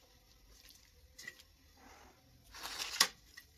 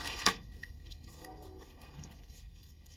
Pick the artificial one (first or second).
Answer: second